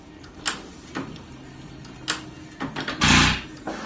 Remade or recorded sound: recorded